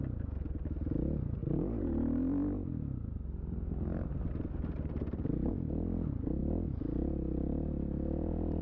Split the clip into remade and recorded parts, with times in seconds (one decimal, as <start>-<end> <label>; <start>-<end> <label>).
0.0-8.6 recorded